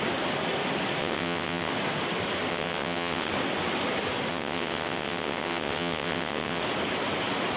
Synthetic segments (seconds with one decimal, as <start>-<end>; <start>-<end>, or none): 1.0-1.7; 2.5-3.3; 4.3-6.6